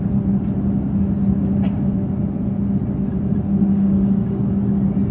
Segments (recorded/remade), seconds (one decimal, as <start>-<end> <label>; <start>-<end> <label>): 0.0-3.6 recorded; 3.6-4.5 remade; 4.5-5.1 recorded